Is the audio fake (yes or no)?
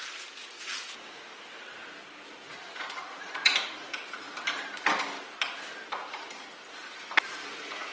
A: no